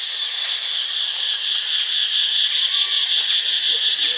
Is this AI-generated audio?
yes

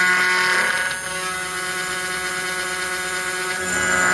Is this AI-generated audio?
no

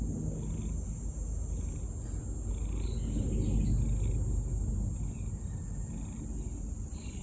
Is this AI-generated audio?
no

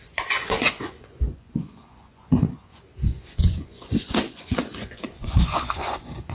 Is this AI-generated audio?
yes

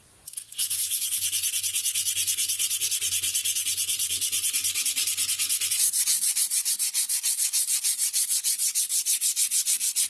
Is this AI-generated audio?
yes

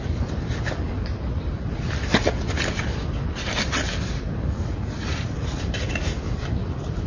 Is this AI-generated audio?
no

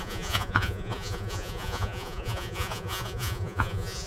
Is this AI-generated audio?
yes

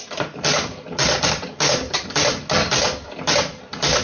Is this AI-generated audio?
no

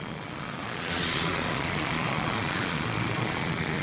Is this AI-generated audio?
yes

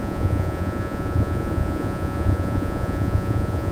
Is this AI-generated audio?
yes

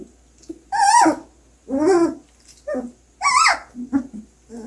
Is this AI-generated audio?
no